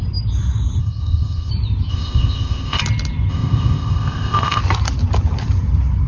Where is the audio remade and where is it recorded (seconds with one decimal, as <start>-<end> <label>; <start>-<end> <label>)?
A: 0.0-0.8 recorded; 0.8-1.5 remade; 1.5-1.9 recorded; 1.9-2.8 remade; 2.8-3.3 recorded; 3.3-4.6 remade; 4.6-6.1 recorded